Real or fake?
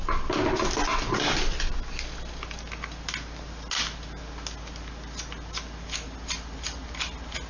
real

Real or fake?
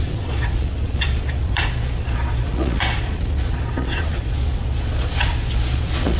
fake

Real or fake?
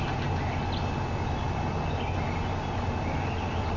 real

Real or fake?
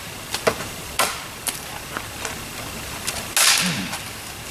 real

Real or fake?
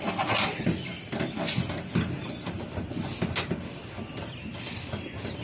real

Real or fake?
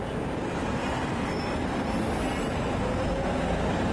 real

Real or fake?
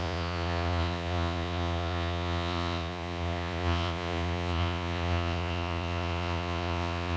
fake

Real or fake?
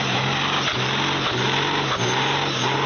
real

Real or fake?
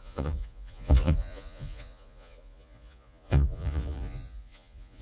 fake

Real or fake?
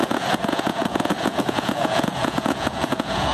fake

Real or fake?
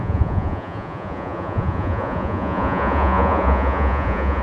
fake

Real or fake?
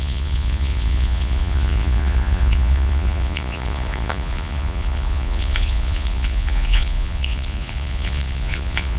fake